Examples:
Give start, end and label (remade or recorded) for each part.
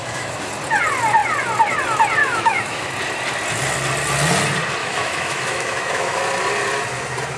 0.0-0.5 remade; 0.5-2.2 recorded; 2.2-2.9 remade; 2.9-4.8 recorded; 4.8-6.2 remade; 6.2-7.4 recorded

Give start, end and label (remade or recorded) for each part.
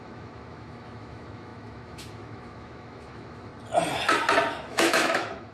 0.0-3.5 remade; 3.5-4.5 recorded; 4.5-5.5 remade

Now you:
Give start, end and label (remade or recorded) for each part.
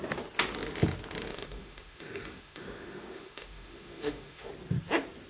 0.0-1.3 recorded; 1.3-4.5 remade; 4.5-5.3 recorded